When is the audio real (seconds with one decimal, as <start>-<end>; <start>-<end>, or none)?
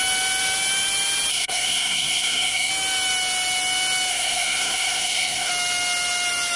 0.0-1.3; 2.7-4.1; 5.5-6.6